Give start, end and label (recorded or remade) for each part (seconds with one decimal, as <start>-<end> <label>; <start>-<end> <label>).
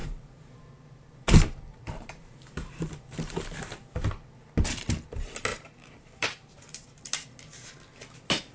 0.0-4.1 remade; 4.1-5.5 recorded; 5.5-7.0 remade; 7.0-8.5 recorded